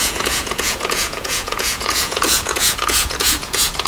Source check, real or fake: fake